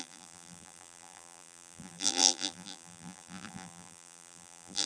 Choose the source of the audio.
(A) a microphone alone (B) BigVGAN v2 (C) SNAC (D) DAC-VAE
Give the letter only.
B